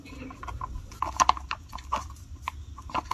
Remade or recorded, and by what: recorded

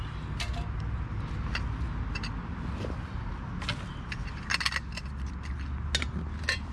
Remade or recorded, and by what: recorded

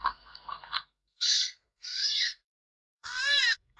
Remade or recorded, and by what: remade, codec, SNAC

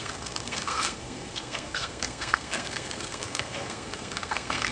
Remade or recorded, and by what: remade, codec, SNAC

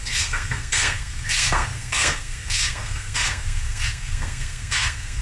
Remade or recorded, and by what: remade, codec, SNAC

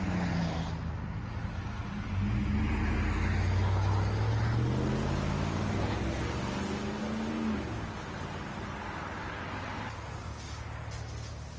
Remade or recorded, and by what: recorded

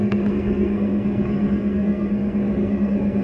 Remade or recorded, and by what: remade, codec, SNAC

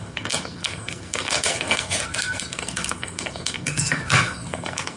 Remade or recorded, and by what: remade, codec, SNAC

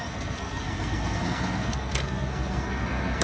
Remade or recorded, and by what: remade, codec, SNAC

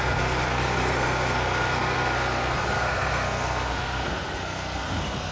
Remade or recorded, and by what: remade, codec, SNAC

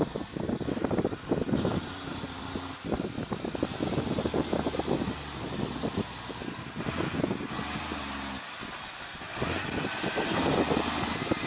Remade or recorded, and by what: recorded